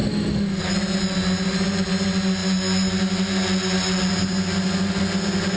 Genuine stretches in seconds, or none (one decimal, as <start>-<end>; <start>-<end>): 0.6-5.6